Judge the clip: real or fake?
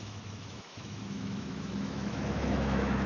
fake